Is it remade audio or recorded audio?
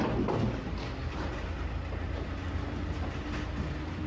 recorded